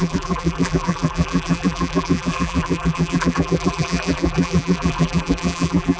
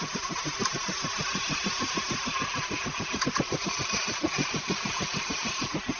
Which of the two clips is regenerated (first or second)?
first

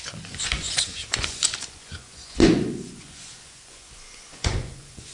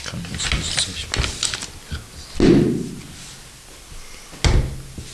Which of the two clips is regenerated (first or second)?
first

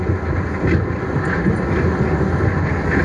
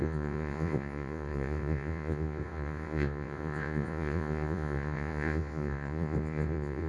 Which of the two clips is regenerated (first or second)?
second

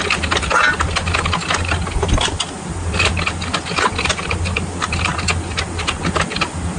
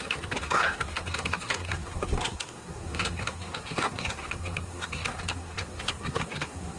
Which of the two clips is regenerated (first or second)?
second